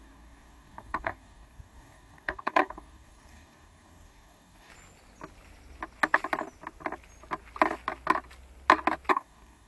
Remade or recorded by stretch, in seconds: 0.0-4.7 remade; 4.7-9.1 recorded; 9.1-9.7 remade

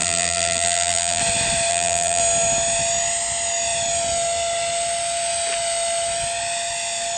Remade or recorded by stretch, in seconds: 0.0-1.2 remade; 1.2-1.7 recorded; 1.7-2.2 remade; 2.2-7.2 recorded

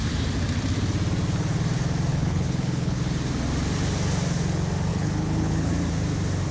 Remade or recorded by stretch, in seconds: 0.0-2.1 recorded; 2.1-3.0 remade; 3.0-4.9 recorded; 4.9-5.7 remade; 5.7-6.5 recorded